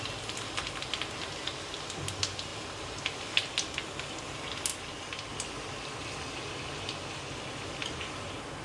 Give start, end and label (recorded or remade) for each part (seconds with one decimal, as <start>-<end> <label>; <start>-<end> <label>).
0.0-8.6 recorded